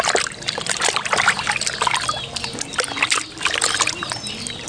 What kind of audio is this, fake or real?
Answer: real